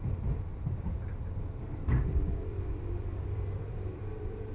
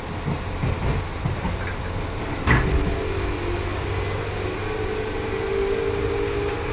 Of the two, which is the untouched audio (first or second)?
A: second